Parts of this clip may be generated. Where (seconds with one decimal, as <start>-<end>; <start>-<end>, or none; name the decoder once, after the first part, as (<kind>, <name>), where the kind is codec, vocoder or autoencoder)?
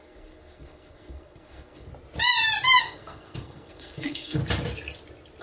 0.0-1.9 (codec, SNAC); 2.8-4.4